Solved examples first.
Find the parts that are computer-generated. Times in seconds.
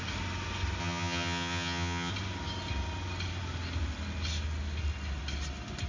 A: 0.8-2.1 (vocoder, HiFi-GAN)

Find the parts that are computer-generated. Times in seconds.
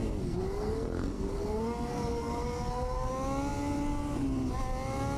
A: 0.0-3.1 (codec, SNAC)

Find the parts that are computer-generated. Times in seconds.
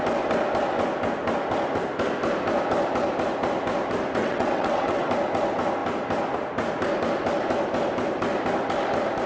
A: 4.2-5.1 (vocoder, WaveNeXt)